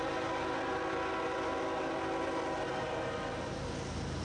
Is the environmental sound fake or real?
real